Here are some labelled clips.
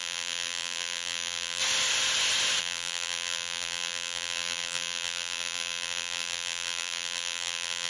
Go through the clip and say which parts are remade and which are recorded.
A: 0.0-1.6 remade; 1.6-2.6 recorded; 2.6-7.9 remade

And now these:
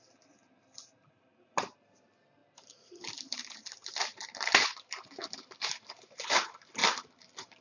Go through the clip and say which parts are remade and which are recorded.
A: 0.0-6.8 remade; 6.8-7.6 recorded

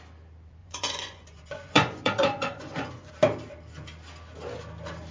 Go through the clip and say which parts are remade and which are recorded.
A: 0.0-0.6 recorded; 0.6-3.1 remade; 3.1-5.1 recorded